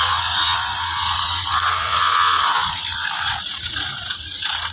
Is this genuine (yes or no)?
no